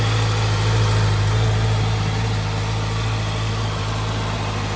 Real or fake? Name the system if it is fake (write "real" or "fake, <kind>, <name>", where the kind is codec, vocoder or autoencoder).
real